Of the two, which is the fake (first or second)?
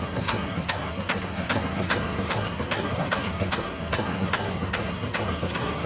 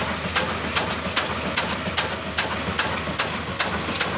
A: first